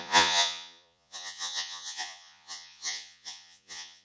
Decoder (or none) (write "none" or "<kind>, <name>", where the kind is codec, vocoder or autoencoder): vocoder, Vocos